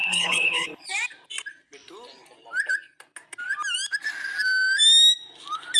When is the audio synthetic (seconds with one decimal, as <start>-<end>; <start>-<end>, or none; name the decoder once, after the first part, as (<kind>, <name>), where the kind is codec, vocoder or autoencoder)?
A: 0.0-0.9 (codec, HILCodec)